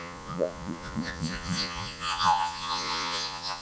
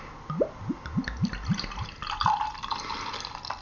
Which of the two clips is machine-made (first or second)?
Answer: first